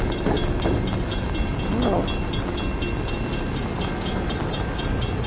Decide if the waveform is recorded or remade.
recorded